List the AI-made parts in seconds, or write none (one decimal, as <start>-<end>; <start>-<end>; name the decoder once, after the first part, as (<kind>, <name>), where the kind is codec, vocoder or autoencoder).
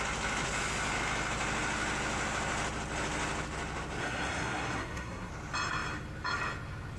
4.0-5.3 (codec, SNAC)